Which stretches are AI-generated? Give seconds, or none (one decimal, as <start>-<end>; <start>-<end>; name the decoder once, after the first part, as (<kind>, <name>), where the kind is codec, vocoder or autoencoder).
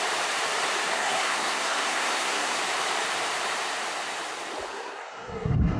0.9-2.6 (codec, SNAC); 4.7-5.8